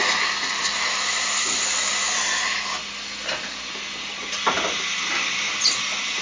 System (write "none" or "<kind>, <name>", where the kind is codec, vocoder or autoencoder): none